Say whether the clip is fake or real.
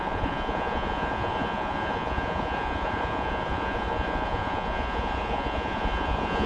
fake